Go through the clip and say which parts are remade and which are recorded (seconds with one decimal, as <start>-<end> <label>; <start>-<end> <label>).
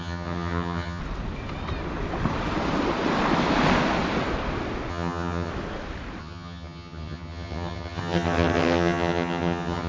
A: 0.0-1.0 remade; 1.0-4.9 recorded; 4.9-5.5 remade; 5.5-6.2 recorded; 6.2-9.9 remade